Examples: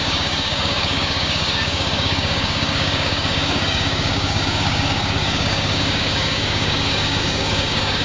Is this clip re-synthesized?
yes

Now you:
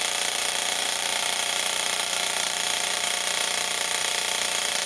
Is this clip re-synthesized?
yes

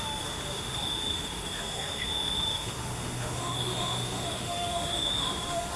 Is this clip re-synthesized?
yes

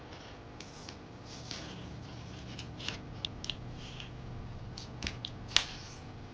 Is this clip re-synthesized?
no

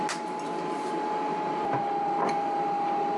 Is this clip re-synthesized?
no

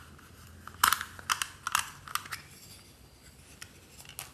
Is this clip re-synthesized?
no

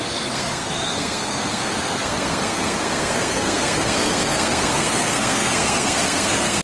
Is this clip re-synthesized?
yes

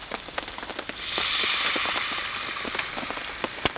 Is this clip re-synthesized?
no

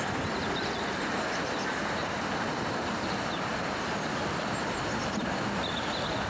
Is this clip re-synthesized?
no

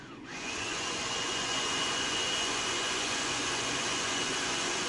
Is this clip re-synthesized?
yes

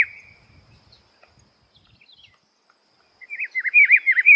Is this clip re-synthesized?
no